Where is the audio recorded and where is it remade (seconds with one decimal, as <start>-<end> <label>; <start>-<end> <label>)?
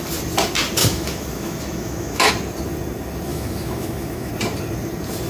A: 0.0-0.8 recorded; 0.8-2.3 remade; 2.3-3.3 recorded; 3.3-4.3 remade; 4.3-5.3 recorded